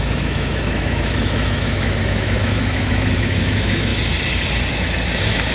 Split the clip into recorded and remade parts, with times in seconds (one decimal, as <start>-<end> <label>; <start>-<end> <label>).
0.0-3.9 remade; 3.9-4.7 recorded; 4.7-5.5 remade